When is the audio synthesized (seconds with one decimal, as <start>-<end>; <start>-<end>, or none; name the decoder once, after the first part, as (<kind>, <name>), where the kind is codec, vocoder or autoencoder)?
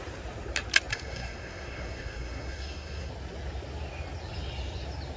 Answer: 0.9-3.1 (codec, SNAC)